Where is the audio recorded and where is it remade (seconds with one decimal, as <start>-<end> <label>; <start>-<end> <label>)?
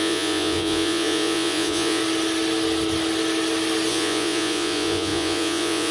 0.0-2.0 remade; 2.0-3.9 recorded; 3.9-5.9 remade